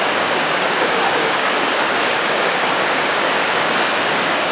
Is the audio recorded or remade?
remade